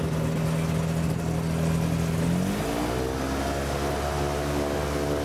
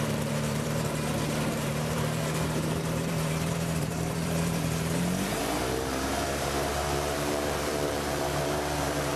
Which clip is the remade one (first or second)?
second